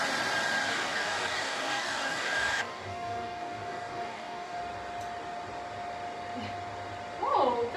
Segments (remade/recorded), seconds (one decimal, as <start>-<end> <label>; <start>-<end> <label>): 0.0-0.7 recorded; 0.7-4.6 remade; 4.6-7.8 recorded